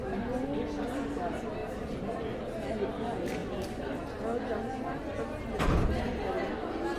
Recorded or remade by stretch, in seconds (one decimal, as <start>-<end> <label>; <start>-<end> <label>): 0.0-1.6 recorded; 1.6-2.4 remade; 2.4-7.0 recorded